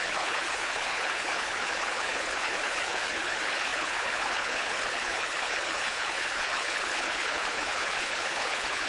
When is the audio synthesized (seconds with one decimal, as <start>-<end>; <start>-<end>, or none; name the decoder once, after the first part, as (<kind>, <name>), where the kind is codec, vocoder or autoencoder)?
0.0-8.9 (codec, HILCodec)